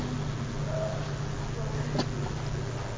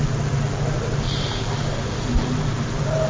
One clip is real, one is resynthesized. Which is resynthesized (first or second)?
second